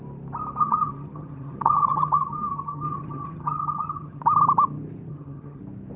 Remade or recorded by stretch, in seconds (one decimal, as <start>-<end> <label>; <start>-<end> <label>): 0.0-0.6 recorded; 0.6-4.2 remade; 4.2-5.1 recorded; 5.1-5.6 remade; 5.6-6.0 recorded